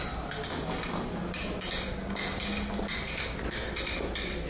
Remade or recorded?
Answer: recorded